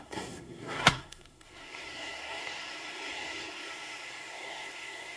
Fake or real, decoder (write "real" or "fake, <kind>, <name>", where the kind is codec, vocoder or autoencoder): fake, codec, SNAC